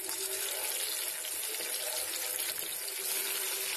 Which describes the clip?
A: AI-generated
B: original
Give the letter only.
B